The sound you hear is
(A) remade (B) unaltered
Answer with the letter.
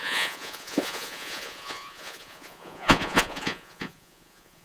A